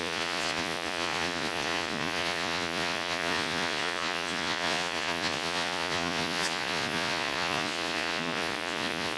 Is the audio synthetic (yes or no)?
yes